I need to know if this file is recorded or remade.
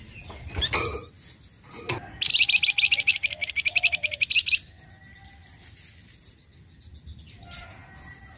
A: recorded